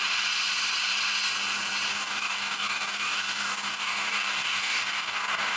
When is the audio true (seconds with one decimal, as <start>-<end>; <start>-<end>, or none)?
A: 0.0-1.9